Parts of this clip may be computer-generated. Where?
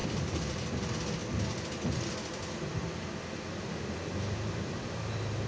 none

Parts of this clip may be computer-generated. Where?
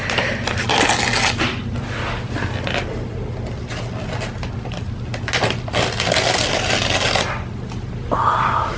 none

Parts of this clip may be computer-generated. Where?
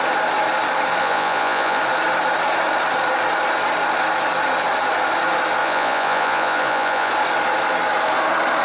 1.0-1.8 (vocoder, Vocos); 5.6-7.1